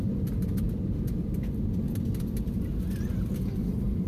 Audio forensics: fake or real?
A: real